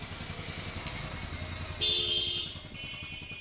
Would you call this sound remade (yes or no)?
no